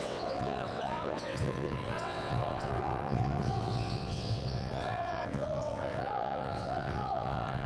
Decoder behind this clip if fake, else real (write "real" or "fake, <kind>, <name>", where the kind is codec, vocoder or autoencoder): fake, vocoder, WaveNeXt